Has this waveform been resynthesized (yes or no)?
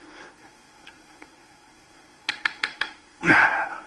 yes